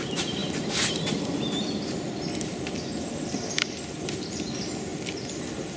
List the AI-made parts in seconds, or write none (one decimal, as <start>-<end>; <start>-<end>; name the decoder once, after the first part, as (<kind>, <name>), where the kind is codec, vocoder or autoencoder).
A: none